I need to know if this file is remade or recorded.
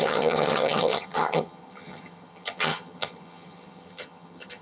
remade